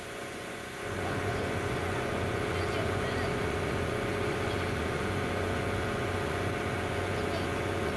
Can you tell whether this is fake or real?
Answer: fake